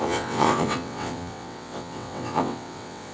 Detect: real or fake fake